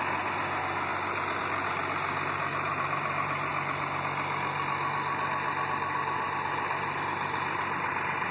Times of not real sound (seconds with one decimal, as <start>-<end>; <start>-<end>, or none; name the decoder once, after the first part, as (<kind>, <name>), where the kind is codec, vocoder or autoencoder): none